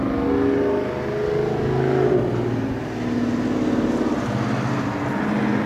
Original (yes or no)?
yes